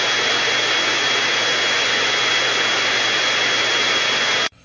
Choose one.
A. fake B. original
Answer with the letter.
A